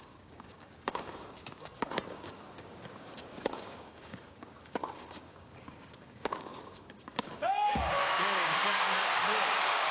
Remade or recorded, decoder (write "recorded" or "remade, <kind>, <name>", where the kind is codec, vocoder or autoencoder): remade, codec, DAC